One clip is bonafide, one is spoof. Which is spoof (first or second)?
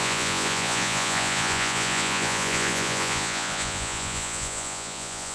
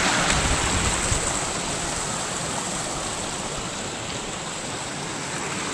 first